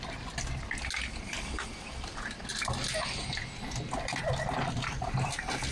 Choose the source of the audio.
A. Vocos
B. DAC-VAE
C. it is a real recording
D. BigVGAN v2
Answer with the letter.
C